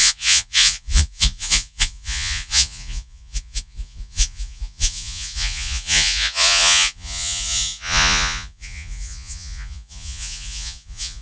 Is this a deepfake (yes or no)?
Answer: yes